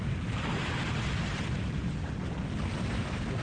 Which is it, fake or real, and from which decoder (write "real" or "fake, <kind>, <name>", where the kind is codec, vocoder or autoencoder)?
real